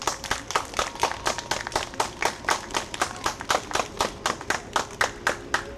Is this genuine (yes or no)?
yes